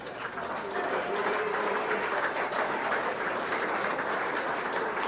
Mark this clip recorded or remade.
remade